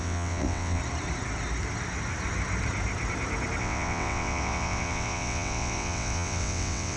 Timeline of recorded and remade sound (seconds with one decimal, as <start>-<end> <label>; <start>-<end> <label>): 0.0-0.8 remade; 0.8-3.6 recorded; 3.6-7.0 remade